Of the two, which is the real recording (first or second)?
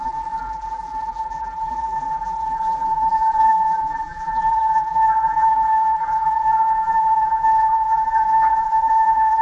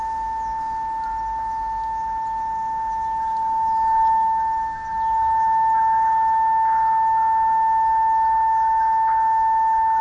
second